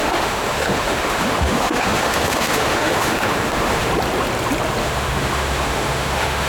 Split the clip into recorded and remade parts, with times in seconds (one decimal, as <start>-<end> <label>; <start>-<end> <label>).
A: 0.0-3.9 remade; 3.9-4.8 recorded; 4.8-6.5 remade